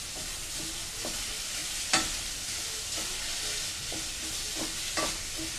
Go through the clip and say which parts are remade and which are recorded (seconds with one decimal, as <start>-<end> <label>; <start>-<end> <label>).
0.0-5.6 recorded